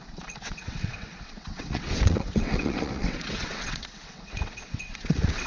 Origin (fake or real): fake